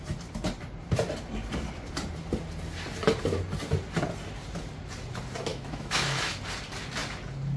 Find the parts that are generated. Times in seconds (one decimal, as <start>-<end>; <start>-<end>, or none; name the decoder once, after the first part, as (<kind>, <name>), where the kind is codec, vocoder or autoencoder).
5.5-6.4 (autoencoder, DAC-VAE)